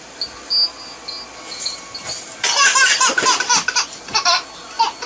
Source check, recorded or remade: recorded